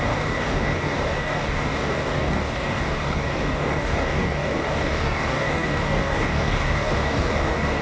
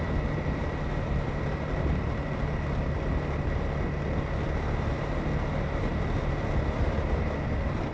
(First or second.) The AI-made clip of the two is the first